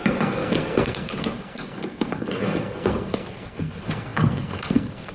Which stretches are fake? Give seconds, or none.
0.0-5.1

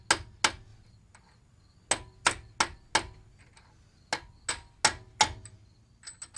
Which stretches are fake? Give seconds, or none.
none

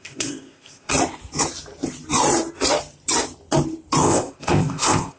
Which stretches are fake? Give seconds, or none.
0.0-0.9; 4.0-5.2

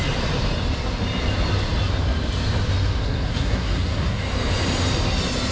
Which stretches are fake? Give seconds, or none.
3.0-4.2

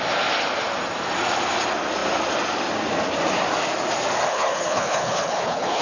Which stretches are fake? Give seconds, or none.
4.3-5.8